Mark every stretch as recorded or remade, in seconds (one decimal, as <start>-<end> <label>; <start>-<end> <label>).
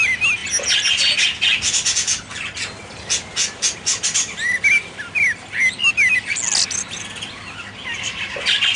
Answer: 0.0-8.8 recorded